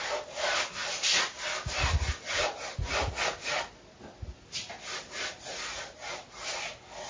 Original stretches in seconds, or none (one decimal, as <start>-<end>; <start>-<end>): 0.0-7.1

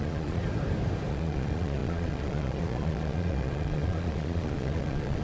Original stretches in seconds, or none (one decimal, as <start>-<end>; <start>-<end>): 0.4-1.1

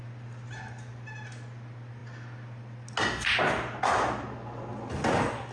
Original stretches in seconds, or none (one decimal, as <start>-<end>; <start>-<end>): 0.0-5.5

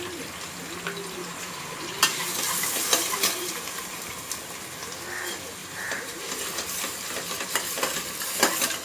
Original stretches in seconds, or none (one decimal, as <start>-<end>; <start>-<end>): 0.0-1.2; 3.8-5.6; 6.4-8.8